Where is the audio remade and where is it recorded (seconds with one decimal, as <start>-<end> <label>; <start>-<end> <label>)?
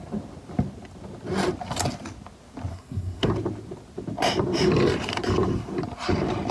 0.0-2.7 recorded; 2.7-3.3 remade; 3.3-6.5 recorded